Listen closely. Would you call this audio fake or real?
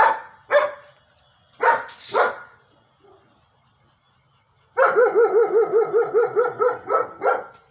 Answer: real